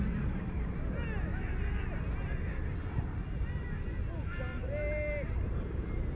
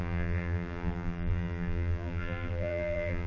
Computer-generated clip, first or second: second